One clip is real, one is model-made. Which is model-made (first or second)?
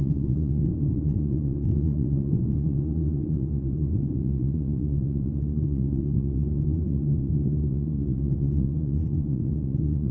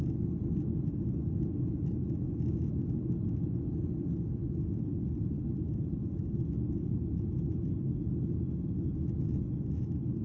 first